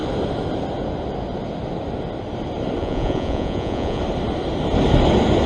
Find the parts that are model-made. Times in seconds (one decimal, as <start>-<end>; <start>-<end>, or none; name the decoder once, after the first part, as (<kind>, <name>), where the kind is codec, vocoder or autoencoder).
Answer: 2.8-4.0 (vocoder, Vocos)